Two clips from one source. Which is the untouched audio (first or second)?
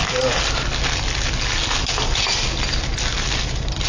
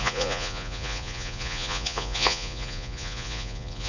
first